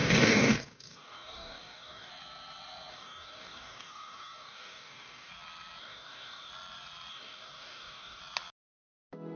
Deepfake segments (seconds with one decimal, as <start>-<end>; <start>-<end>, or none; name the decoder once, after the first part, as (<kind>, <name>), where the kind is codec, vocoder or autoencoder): 0.0-2.1 (codec, DAC); 2.9-5.3; 5.8-6.5; 7.1-8.2